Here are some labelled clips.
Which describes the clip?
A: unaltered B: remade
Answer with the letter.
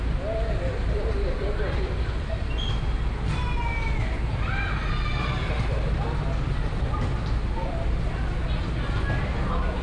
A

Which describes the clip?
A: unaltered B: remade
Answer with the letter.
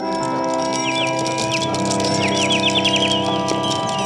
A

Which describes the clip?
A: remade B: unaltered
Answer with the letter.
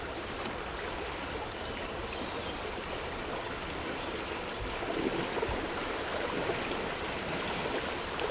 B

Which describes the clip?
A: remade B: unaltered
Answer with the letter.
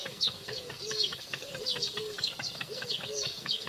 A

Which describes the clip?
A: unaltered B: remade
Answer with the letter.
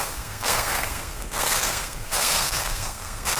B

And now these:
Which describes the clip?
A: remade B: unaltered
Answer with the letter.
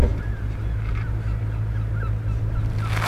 B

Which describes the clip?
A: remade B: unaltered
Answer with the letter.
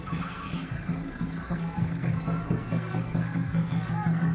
A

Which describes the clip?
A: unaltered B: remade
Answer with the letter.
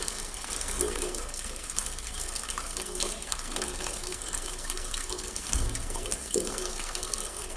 B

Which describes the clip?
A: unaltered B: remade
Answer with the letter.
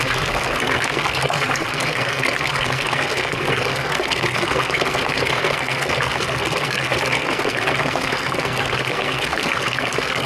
B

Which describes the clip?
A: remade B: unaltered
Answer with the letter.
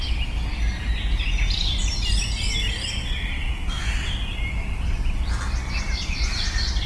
B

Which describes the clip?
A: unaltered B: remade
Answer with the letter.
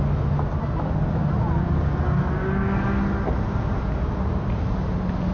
A